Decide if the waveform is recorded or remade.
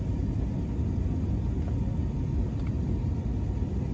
recorded